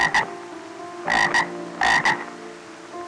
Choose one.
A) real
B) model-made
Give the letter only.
A